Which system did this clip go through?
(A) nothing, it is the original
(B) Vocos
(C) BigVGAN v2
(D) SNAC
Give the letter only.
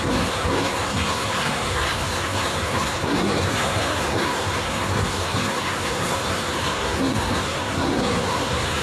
D